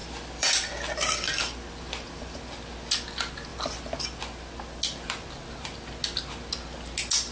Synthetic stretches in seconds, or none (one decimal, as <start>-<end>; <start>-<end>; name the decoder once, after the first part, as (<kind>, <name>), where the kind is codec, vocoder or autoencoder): 0.0-2.4 (vocoder, BigVGAN v2); 3.5-4.2